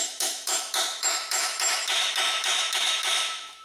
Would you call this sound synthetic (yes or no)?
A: yes